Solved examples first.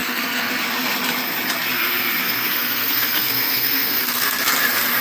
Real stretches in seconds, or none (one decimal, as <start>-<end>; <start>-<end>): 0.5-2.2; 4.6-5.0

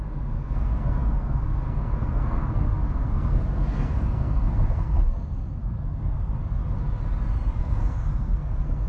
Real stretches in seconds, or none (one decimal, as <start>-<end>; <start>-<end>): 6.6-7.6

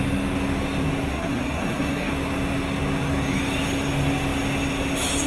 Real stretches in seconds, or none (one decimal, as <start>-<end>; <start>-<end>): 0.0-1.1; 2.1-5.3

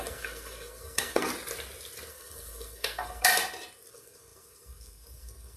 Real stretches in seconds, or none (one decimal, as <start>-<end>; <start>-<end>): 1.3-2.1; 3.3-3.9